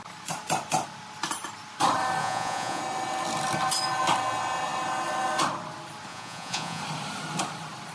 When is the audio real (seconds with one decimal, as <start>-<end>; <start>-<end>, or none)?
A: 0.0-2.2; 2.8-6.1; 6.8-7.9